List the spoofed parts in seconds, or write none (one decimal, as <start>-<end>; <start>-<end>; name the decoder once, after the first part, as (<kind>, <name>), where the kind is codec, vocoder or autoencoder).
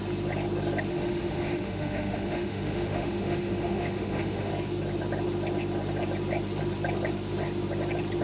0.9-4.5 (autoencoder, DAC-VAE)